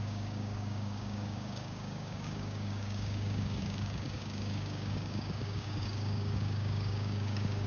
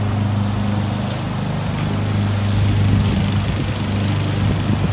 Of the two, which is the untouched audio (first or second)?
second